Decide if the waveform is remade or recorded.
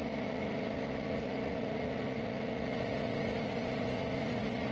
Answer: remade